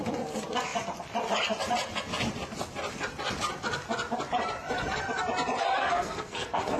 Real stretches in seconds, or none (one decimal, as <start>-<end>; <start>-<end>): 0.0-5.8